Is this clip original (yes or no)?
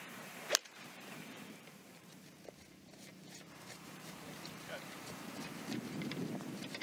no